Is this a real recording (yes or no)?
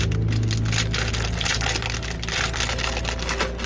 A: yes